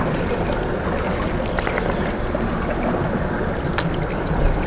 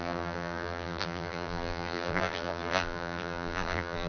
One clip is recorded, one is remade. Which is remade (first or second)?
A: second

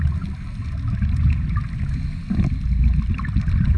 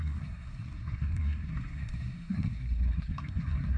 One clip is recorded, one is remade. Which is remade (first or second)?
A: second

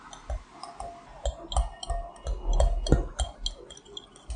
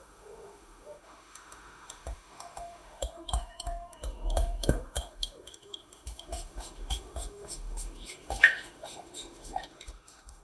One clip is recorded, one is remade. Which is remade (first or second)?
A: second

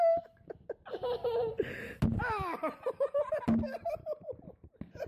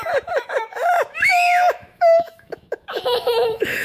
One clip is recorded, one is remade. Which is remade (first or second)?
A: second